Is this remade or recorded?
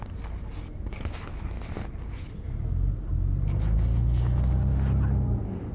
recorded